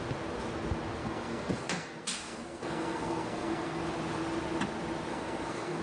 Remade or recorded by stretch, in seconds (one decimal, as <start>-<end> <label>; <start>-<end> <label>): 0.0-1.0 recorded; 1.0-3.8 remade; 3.8-5.1 recorded; 5.1-5.8 remade